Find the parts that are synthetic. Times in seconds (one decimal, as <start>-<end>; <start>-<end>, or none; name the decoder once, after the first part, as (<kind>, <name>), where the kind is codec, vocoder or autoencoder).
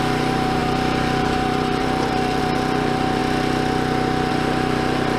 0.0-3.2 (vocoder, BigVGAN v2); 4.3-5.2